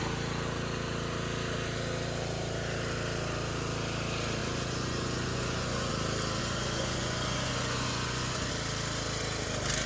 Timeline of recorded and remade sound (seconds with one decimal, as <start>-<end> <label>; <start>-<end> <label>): 0.0-4.4 recorded; 4.4-5.9 remade; 5.9-6.4 recorded; 6.4-8.5 remade; 8.5-9.9 recorded

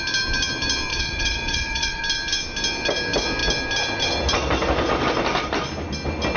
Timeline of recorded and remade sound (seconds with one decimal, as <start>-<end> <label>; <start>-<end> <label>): 0.0-0.9 recorded; 0.9-2.0 remade; 2.0-6.4 recorded

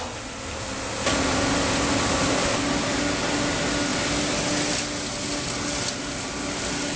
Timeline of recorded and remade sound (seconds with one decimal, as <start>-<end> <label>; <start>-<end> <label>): 0.0-2.2 recorded; 2.2-3.0 remade; 3.0-7.0 recorded

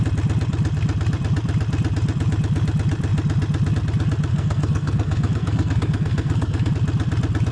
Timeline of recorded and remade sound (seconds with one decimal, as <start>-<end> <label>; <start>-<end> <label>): 0.0-4.3 recorded; 4.3-6.7 remade; 6.7-7.5 recorded

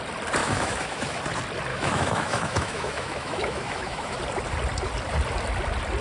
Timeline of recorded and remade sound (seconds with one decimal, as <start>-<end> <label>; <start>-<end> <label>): 0.0-0.4 recorded; 0.4-1.2 remade; 1.2-1.7 recorded; 1.7-4.2 remade; 4.2-6.0 recorded

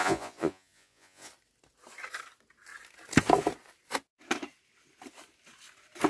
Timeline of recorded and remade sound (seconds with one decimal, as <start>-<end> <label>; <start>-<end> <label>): 0.0-1.3 remade; 1.3-6.1 recorded

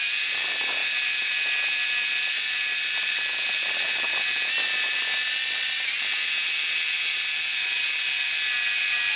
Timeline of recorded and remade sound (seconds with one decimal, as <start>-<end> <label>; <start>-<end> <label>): 0.0-9.2 recorded

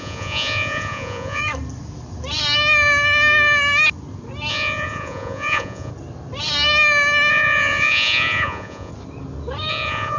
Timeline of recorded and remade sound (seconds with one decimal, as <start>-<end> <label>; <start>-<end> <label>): 0.0-1.4 remade; 1.4-4.5 recorded; 4.5-5.9 remade; 5.9-7.3 recorded; 7.3-8.9 remade; 8.9-9.7 recorded; 9.7-10.2 remade